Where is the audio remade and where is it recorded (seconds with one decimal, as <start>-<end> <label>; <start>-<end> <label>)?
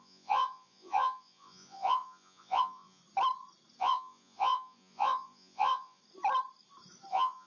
0.0-3.0 remade; 3.0-3.8 recorded; 3.8-6.0 remade; 6.0-7.1 recorded; 7.1-7.5 remade